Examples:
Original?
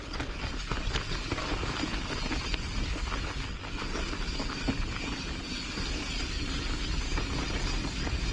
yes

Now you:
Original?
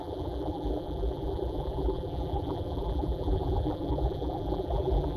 no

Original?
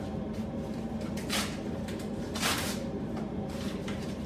no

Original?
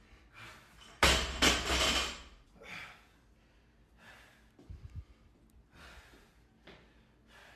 yes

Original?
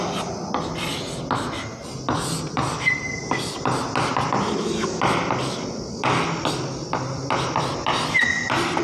yes